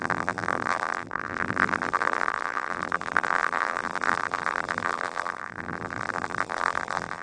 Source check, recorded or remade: remade